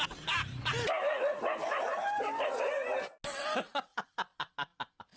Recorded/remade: recorded